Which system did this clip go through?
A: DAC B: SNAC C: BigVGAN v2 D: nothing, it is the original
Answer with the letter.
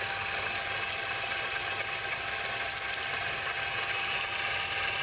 D